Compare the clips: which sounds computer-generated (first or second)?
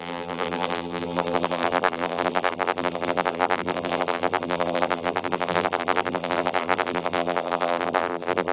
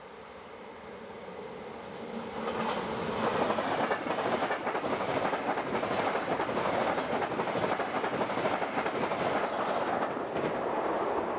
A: first